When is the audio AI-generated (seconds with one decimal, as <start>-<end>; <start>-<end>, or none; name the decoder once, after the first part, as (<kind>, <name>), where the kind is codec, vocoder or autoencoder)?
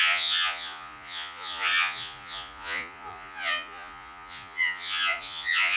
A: 0.0-5.8 (vocoder, Vocos)